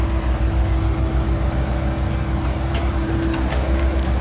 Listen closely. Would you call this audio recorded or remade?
recorded